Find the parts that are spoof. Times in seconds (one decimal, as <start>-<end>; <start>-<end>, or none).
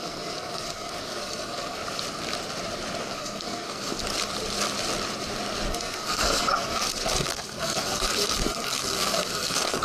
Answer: 0.0-1.8; 3.0-4.0; 5.7-9.8